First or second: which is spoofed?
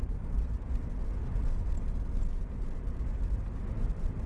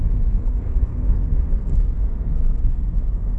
second